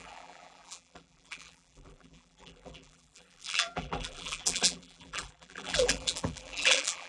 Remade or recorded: remade